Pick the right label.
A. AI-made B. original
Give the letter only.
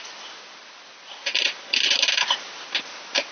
B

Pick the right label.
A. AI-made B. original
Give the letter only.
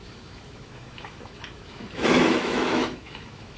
A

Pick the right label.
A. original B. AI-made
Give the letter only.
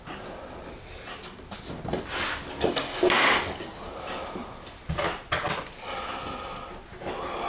A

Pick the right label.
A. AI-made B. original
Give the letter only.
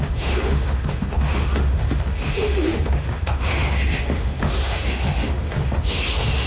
A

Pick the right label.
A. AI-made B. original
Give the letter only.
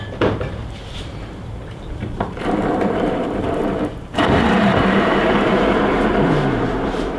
A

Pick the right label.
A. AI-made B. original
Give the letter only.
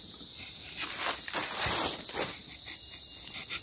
B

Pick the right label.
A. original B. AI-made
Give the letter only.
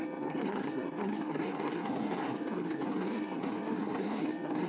B